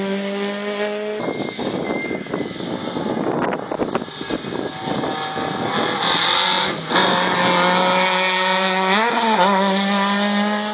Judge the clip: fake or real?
real